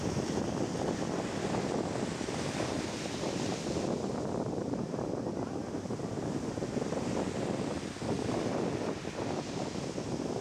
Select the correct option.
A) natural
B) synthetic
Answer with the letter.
A